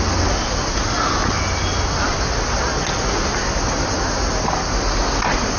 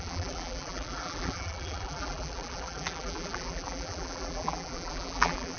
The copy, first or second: second